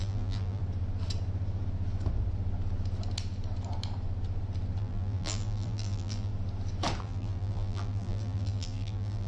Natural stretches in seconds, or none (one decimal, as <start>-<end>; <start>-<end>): 0.6-4.8; 6.3-7.0